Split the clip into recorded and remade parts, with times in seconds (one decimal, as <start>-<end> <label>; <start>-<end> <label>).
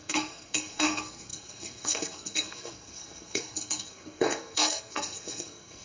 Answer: 0.0-5.8 remade